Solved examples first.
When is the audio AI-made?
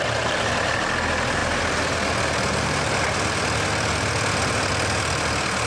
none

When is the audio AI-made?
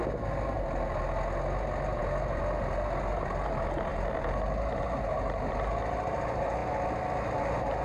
none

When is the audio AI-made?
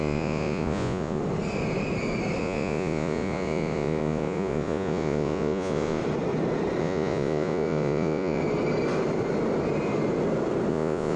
0.0-1.2 (vocoder, Vocos); 2.4-6.0; 6.8-8.4; 10.7-11.2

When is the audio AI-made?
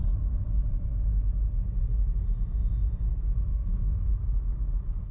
3.5-4.1 (codec, SNAC)